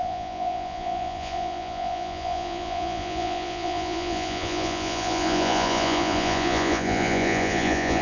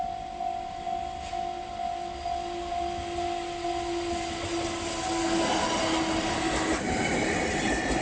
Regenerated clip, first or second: first